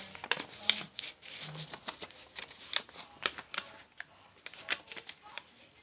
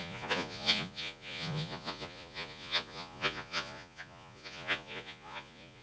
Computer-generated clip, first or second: second